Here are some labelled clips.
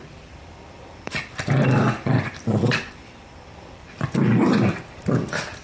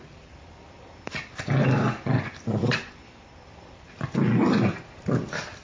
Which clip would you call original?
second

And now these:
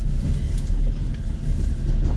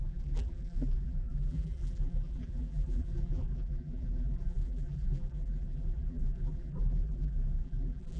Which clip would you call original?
first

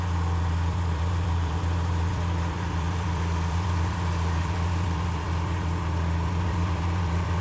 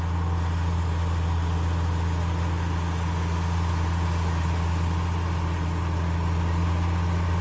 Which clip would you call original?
second